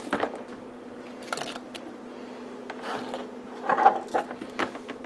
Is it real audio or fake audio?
real